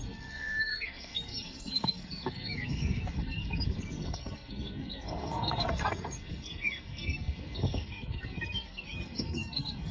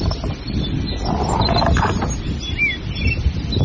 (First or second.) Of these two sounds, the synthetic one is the first